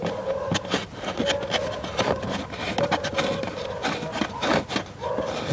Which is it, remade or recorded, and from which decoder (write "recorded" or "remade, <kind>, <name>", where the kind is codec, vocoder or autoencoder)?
recorded